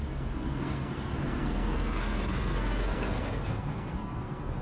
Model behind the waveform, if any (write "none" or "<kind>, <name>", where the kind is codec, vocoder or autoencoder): codec, SNAC